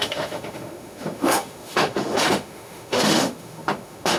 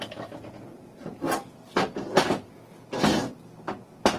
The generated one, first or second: first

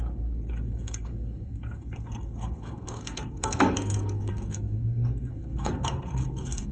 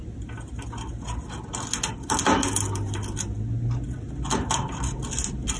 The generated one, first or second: first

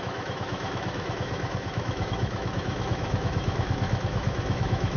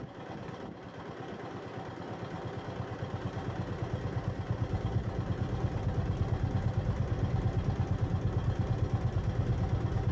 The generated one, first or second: first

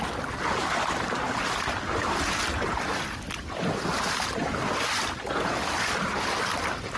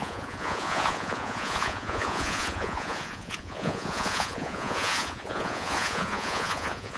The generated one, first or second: second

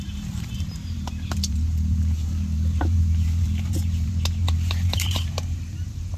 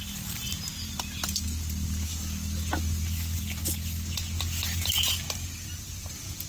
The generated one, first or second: first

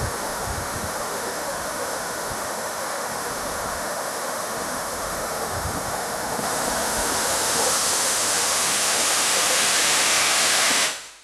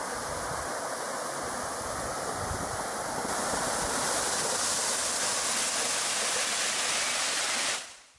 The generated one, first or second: first